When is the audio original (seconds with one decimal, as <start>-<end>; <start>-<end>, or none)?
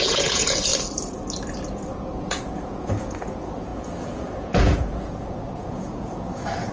0.7-1.7